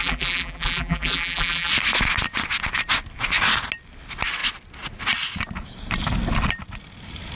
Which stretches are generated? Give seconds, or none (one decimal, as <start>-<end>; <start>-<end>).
0.0-1.7